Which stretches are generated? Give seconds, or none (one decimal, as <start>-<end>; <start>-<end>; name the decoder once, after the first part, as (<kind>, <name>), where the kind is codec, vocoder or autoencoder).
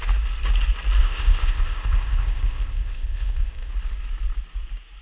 1.0-3.7 (codec, ZipCodec)